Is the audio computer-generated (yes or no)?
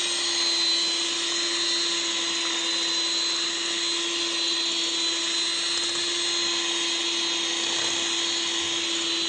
no